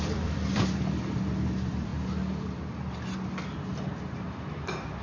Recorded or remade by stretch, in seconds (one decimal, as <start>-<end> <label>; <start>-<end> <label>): 0.0-1.9 remade; 1.9-5.0 recorded